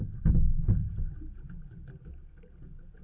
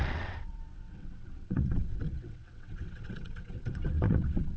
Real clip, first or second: first